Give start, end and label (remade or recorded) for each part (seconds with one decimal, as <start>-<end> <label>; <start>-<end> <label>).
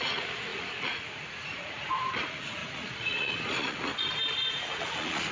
0.0-3.9 remade; 3.9-4.5 recorded; 4.5-5.3 remade